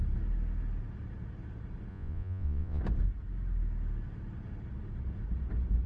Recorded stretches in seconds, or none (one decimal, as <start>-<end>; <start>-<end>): 0.0-1.9; 2.8-5.9